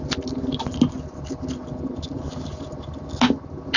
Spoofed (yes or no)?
no